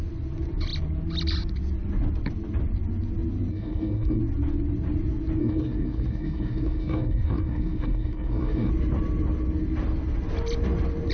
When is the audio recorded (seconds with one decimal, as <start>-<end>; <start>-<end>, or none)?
0.0-3.5; 4.2-5.4; 8.7-11.1